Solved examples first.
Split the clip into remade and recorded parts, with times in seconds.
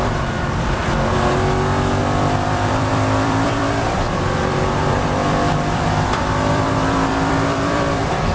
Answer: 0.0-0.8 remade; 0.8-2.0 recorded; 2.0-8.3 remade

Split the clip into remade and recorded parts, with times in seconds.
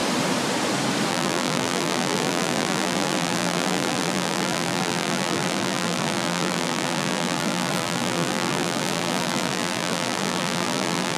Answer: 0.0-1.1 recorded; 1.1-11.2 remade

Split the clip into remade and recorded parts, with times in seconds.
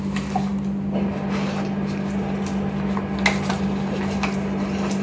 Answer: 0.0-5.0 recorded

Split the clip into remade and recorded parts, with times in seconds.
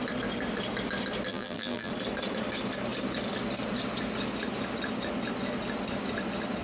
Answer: 0.0-1.3 recorded; 1.3-1.9 remade; 1.9-6.6 recorded